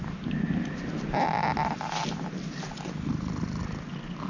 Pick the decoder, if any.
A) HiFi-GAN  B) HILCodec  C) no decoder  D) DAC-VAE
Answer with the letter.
C